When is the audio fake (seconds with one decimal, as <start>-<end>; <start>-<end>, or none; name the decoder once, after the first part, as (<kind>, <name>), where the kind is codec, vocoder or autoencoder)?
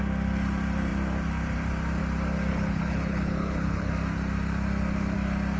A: 2.5-3.9 (codec, HILCodec)